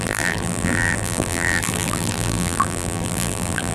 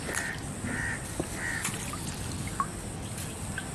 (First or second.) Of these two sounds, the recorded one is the second